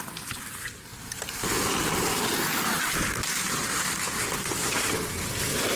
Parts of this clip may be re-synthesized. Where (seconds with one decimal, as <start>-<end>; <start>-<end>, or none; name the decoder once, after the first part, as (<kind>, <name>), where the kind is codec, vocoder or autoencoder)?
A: 0.9-2.2 (vocoder, BigVGAN v2); 3.3-3.9; 4.6-5.3